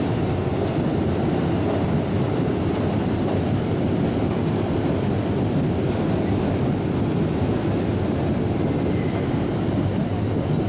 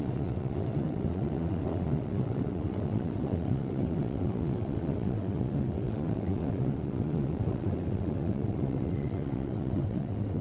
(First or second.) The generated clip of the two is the second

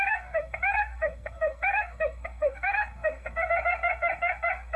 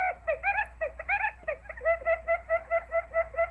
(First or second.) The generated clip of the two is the first